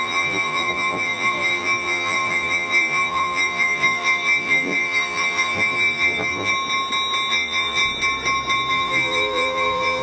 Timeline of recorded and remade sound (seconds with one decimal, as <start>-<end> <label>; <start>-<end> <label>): 0.0-6.5 remade; 6.5-7.3 recorded; 7.3-7.8 remade; 7.8-8.7 recorded; 8.7-10.0 remade